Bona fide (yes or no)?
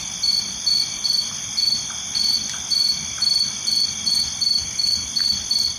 yes